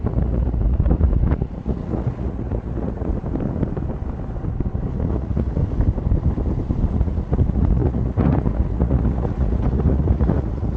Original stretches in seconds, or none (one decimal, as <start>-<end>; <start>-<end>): 3.1-4.9; 5.6-6.9